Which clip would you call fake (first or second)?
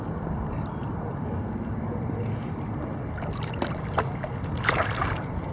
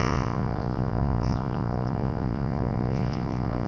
second